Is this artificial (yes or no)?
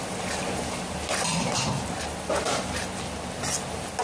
no